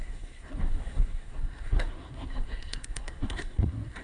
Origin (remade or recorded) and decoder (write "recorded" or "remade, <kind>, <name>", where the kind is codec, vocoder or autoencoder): remade, codec, SNAC